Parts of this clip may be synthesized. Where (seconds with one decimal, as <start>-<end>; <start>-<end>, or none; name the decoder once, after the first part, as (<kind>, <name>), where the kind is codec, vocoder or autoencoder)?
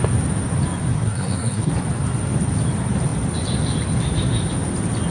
0.9-1.7 (codec, SNAC)